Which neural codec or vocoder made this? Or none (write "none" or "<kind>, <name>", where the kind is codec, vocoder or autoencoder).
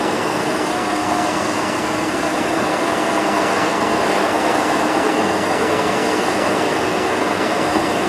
codec, SNAC